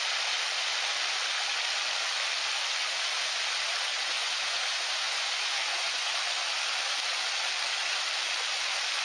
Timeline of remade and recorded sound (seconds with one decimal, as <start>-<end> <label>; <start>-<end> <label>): 0.0-3.9 recorded; 3.9-6.1 remade; 6.1-9.0 recorded